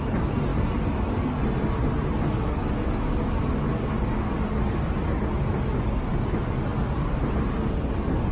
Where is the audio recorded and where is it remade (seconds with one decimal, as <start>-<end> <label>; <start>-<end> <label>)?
0.0-8.3 recorded